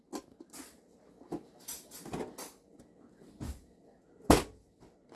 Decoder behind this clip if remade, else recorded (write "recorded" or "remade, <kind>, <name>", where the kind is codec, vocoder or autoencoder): recorded